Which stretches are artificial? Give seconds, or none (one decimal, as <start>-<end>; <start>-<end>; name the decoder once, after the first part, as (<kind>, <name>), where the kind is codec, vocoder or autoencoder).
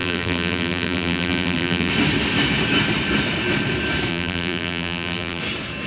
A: 0.0-1.9 (vocoder, BigVGAN v2); 4.1-5.4